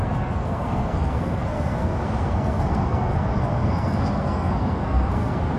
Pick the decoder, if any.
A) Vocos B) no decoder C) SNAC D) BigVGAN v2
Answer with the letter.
C